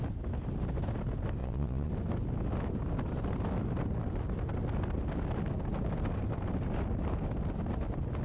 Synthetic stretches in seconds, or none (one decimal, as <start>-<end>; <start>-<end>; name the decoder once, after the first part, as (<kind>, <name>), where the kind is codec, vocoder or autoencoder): 1.4-1.9 (vocoder, Vocos)